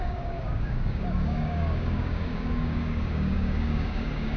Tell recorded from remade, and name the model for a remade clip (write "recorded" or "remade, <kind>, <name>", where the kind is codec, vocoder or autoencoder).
remade, codec, DAC